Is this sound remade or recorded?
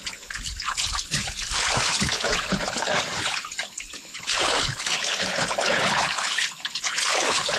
remade